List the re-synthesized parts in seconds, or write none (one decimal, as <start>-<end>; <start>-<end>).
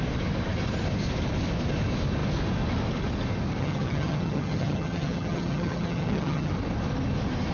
3.6-6.5